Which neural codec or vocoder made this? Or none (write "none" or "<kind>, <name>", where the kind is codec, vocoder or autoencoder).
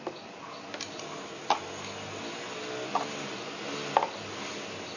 none